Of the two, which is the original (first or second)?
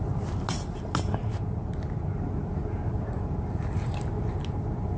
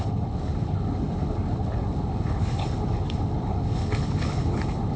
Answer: first